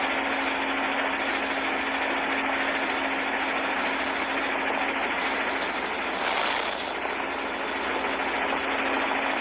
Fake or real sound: real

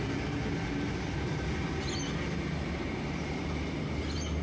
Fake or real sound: real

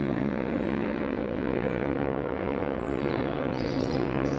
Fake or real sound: fake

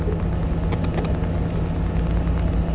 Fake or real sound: real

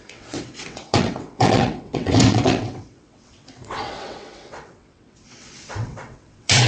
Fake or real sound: fake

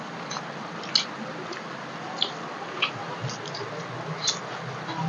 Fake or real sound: real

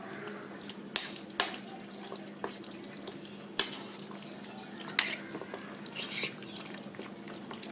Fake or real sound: real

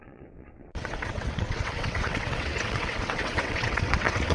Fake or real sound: fake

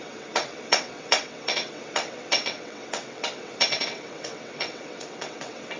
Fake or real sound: fake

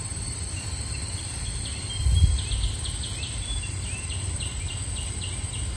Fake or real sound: real